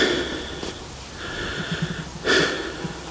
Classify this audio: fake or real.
real